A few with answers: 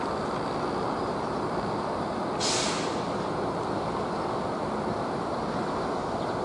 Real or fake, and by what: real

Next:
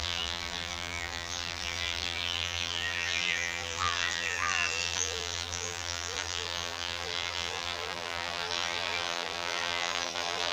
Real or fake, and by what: fake, vocoder, BigVGAN v2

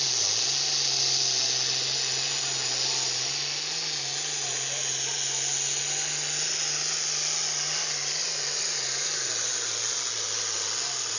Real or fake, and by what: real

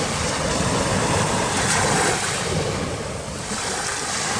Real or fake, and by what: fake, vocoder, BigVGAN v2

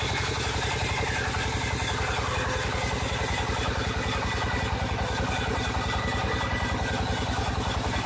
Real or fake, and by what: real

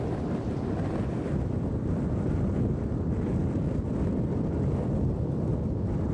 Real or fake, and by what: real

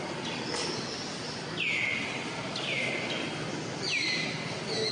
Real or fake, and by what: real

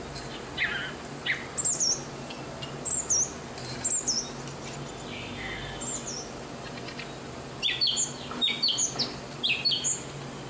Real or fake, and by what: real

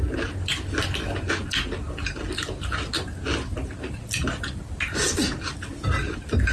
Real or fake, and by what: real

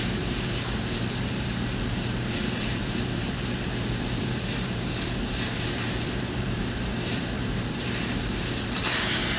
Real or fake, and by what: fake, vocoder, BigVGAN v2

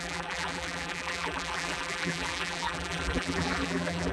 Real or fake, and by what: fake, vocoder, BigVGAN v2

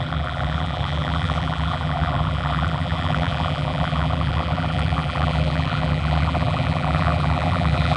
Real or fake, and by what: fake, vocoder, BigVGAN v2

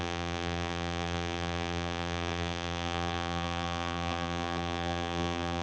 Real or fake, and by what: fake, vocoder, BigVGAN v2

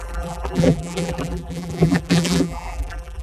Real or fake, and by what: fake, vocoder, BigVGAN v2